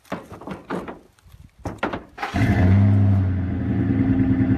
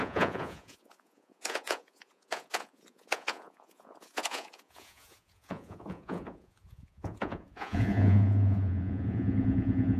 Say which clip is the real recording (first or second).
first